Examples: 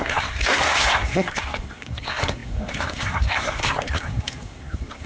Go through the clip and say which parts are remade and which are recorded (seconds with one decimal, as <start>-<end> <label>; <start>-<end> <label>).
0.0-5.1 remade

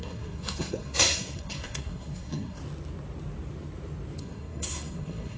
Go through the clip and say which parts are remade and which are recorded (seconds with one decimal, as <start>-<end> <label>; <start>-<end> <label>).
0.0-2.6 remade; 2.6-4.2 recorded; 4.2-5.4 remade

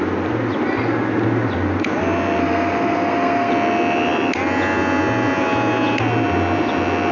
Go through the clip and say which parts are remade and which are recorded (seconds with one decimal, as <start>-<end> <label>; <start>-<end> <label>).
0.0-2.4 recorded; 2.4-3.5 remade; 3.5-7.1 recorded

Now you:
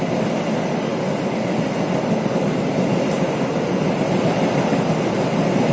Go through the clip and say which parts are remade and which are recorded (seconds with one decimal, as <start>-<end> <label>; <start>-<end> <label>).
0.0-5.7 recorded